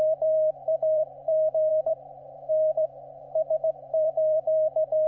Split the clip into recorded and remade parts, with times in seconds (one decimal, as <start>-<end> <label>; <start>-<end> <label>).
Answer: 0.0-5.1 remade